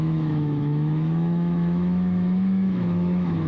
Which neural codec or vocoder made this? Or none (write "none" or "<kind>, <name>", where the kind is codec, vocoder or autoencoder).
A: autoencoder, DAC-VAE